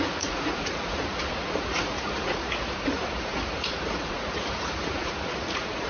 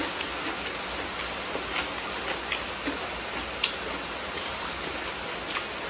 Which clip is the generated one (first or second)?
first